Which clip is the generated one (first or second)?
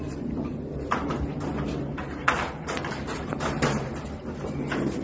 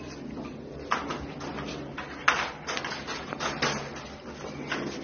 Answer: first